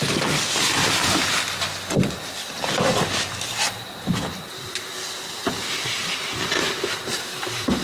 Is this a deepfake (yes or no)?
no